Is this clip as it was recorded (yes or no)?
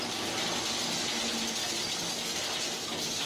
yes